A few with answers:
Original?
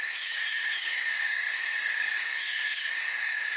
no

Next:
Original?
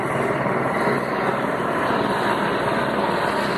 yes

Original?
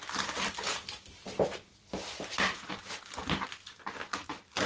yes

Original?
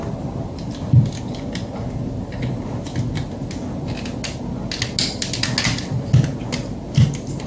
yes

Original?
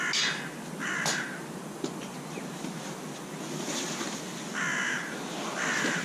yes